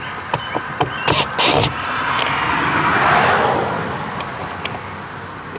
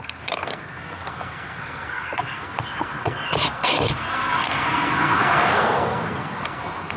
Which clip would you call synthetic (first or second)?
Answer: second